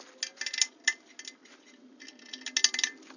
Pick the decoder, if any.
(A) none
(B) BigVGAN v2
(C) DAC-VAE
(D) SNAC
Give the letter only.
A